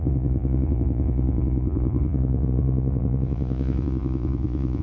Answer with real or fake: fake